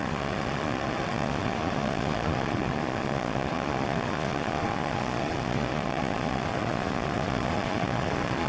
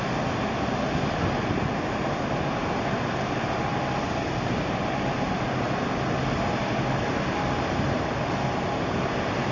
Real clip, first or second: second